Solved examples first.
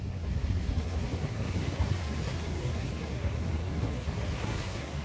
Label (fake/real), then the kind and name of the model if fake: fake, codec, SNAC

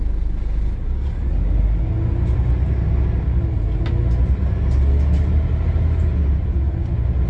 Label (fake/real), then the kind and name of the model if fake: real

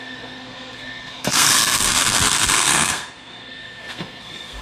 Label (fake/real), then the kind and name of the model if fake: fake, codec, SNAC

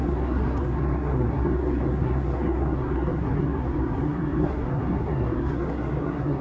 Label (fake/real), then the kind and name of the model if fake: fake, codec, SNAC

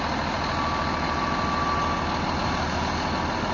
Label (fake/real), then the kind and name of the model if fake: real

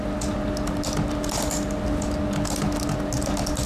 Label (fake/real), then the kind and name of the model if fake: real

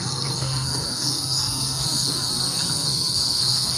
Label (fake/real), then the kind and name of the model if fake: fake, codec, SNAC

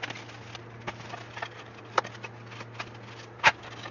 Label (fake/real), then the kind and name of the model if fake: real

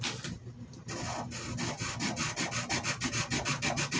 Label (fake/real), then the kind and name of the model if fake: real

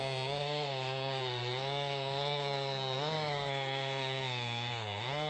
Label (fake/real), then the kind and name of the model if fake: fake, codec, SNAC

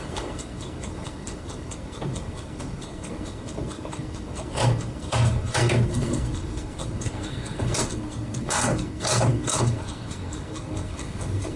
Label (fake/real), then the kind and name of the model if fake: fake, codec, SNAC